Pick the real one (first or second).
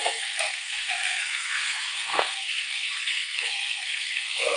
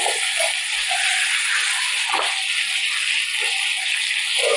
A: second